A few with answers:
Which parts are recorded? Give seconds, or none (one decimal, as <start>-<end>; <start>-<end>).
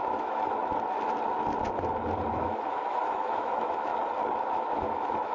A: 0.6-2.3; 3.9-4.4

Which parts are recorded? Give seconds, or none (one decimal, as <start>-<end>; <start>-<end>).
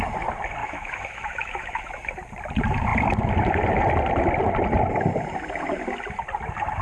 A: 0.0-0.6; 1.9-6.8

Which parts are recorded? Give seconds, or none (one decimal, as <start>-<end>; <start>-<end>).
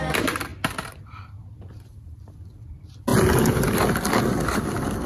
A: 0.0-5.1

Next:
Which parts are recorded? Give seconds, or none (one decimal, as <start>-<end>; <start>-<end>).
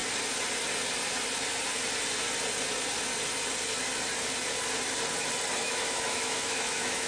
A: 0.0-5.6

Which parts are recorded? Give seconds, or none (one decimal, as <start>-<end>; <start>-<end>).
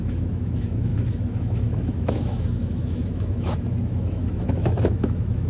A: none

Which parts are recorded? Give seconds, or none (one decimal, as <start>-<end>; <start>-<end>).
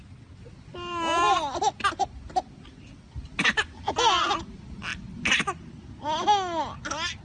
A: 0.0-7.2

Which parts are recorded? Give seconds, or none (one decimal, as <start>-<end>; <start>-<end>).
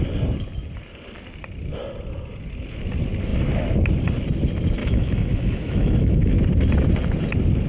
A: 0.0-4.8; 6.3-7.7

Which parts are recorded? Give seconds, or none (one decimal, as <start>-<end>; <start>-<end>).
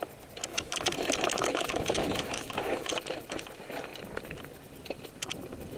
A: 0.0-0.5; 2.9-5.8